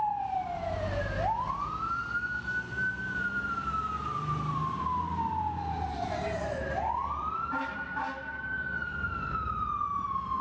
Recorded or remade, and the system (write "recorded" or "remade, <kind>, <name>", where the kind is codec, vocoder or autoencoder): remade, vocoder, BigVGAN v2